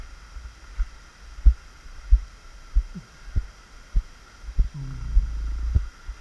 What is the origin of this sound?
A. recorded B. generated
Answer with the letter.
A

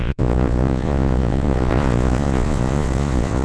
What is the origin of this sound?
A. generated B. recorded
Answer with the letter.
A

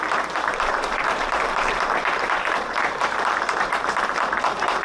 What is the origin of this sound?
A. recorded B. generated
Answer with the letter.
B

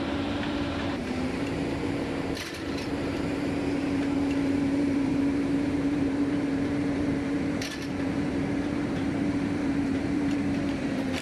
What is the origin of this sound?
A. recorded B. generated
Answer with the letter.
B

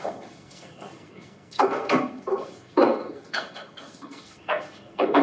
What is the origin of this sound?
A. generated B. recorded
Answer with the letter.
A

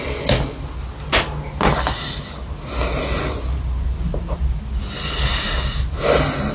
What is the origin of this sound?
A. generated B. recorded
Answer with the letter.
B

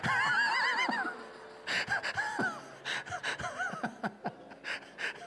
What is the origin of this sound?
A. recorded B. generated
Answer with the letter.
A